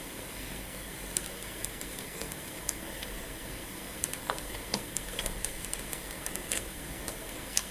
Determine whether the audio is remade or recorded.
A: remade